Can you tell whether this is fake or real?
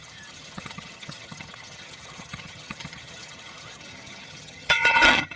fake